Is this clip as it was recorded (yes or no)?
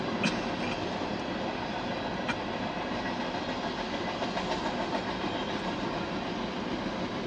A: yes